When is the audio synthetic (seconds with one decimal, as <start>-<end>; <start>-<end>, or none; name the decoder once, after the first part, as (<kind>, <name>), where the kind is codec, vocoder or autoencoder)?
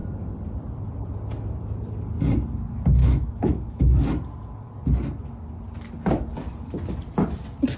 3.0-4.0 (autoencoder, DAC-VAE)